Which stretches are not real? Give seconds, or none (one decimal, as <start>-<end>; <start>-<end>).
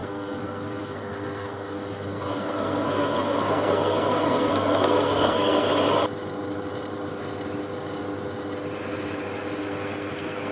0.0-5.7; 9.6-10.5